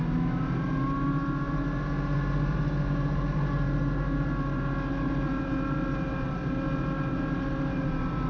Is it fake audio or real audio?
real